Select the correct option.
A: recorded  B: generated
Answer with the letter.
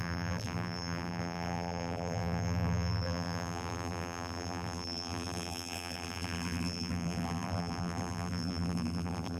B